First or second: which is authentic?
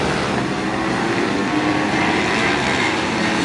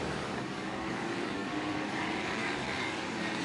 first